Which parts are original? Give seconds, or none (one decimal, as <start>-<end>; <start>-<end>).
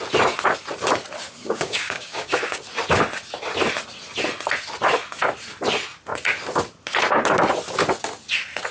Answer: 0.0-1.4; 2.6-8.7